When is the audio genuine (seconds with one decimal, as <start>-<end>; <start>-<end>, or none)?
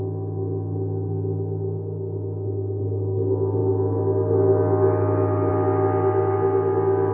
0.0-7.1